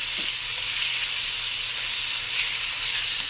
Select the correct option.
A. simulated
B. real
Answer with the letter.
B